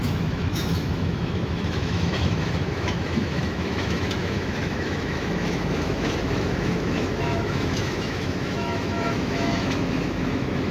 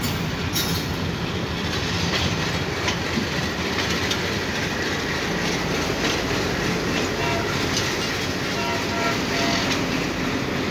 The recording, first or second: second